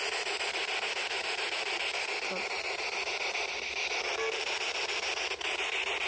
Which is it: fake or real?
real